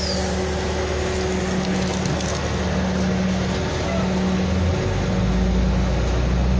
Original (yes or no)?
yes